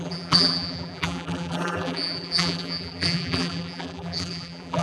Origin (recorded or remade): remade